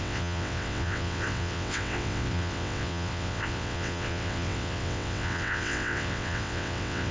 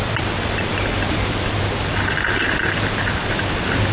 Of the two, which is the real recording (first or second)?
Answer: second